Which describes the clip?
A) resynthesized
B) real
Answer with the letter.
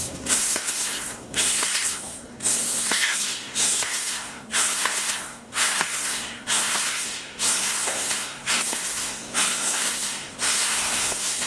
A